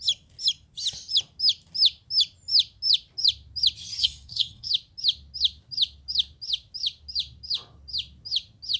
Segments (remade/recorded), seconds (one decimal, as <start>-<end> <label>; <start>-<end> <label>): 0.0-4.0 recorded; 4.0-4.7 remade; 4.7-8.8 recorded